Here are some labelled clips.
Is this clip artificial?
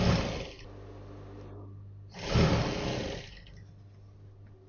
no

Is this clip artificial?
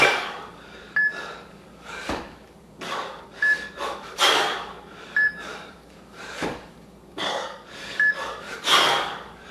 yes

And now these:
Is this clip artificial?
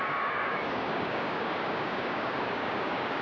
yes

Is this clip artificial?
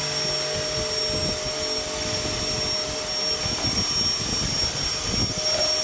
no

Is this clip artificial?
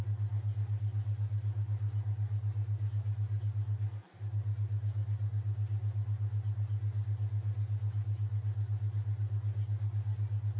no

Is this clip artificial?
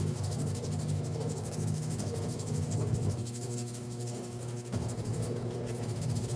yes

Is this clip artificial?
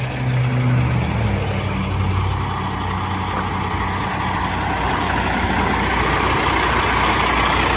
no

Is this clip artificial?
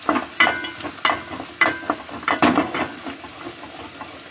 no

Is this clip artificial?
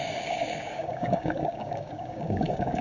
yes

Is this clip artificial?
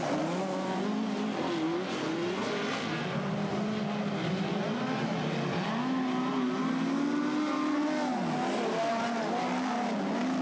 no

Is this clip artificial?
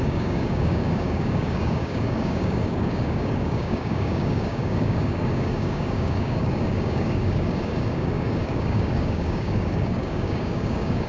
yes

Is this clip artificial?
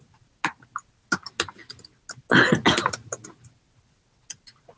no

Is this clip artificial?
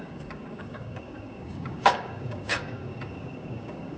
yes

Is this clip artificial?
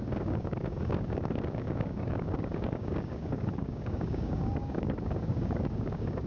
yes